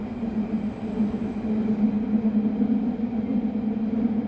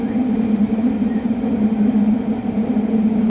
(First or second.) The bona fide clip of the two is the first